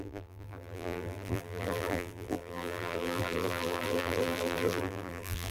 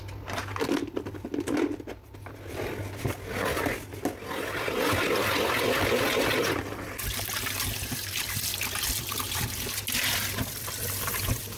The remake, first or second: first